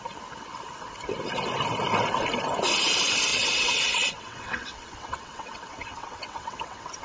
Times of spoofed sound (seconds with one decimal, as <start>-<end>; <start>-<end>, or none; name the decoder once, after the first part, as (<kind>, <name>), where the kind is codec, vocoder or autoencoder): 3.3-7.0 (vocoder, WaveNeXt)